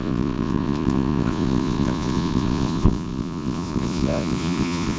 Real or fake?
fake